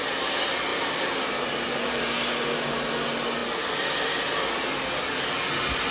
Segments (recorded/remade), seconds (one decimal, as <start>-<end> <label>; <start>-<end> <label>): 0.0-0.7 recorded; 0.7-2.0 remade; 2.0-5.9 recorded